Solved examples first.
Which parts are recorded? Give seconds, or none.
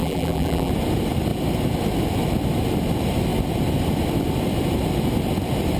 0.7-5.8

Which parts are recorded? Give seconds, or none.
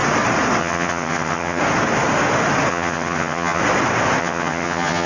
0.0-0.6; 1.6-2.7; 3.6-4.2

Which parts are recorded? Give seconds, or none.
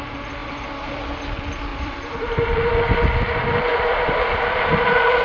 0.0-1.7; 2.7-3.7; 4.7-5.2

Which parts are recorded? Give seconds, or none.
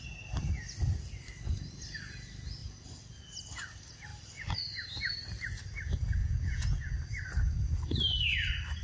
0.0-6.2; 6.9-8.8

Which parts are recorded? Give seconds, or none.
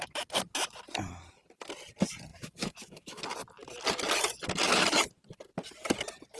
0.0-2.3; 3.2-6.4